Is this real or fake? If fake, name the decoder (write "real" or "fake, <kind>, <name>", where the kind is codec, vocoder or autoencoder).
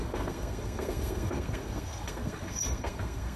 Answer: fake, codec, SNAC